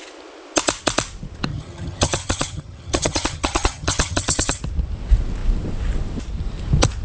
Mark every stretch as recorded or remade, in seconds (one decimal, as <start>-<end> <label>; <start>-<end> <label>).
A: 0.0-1.5 recorded; 1.5-4.6 remade; 4.6-7.0 recorded